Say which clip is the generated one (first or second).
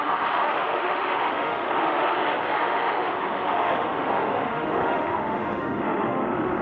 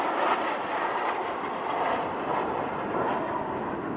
first